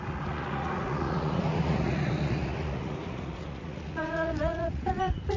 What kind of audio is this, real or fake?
fake